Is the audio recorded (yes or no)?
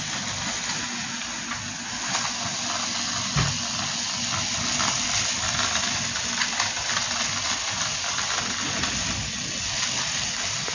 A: yes